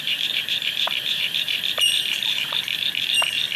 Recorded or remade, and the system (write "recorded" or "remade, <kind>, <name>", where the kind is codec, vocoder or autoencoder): remade, vocoder, BigVGAN v2